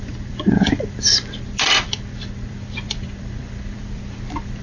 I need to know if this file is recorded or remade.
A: remade